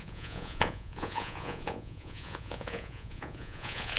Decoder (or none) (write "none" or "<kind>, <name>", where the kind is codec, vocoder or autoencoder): vocoder, Vocos